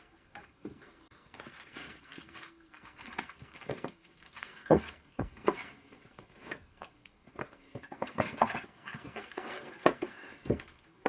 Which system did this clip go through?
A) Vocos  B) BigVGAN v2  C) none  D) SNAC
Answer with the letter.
D